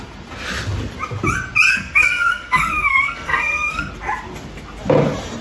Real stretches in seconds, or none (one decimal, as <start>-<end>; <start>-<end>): 0.0-1.7; 3.9-5.4